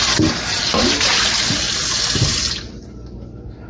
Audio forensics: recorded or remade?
recorded